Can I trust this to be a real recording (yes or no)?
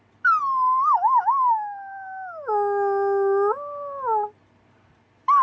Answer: yes